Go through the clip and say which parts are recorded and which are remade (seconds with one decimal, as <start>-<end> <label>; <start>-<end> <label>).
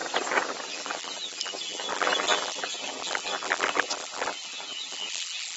0.0-0.7 recorded; 0.7-5.6 remade